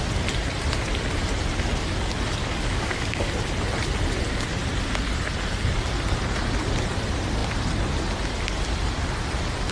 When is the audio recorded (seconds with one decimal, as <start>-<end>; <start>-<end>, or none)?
0.0-2.4; 3.3-9.7